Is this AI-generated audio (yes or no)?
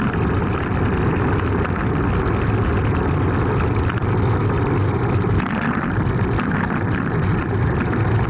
no